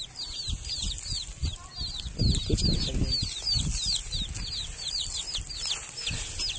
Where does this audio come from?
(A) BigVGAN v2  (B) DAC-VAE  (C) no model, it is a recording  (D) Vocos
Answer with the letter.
C